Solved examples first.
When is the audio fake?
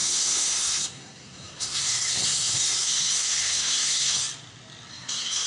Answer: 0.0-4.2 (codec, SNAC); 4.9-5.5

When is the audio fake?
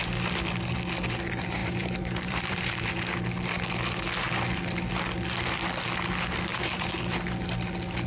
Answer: 1.6-2.9 (vocoder, BigVGAN v2); 6.5-7.0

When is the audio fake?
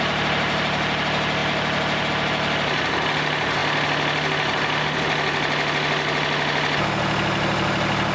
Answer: none